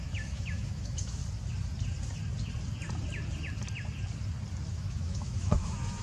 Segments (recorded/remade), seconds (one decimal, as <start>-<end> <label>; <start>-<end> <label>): 0.0-1.2 remade; 1.2-4.7 recorded; 4.7-6.0 remade